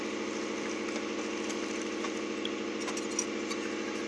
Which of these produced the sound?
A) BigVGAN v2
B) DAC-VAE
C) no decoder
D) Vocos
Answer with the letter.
C